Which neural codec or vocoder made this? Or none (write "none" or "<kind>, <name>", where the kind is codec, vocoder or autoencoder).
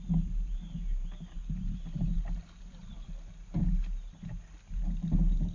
none